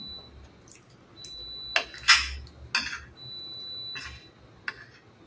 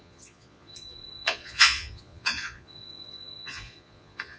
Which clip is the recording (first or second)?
first